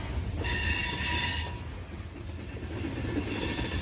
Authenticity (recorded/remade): recorded